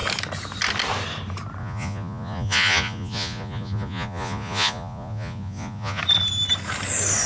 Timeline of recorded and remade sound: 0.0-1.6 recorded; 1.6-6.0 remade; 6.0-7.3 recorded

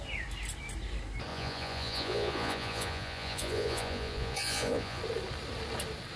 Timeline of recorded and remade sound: 0.0-1.3 recorded; 1.3-5.0 remade; 5.0-6.2 recorded